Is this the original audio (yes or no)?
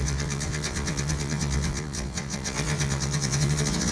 no